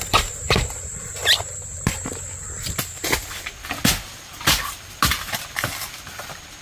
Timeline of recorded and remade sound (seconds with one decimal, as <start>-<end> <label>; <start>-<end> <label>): 0.0-0.4 recorded; 0.4-1.8 remade; 1.8-6.6 recorded